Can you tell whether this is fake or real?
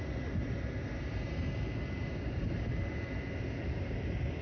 real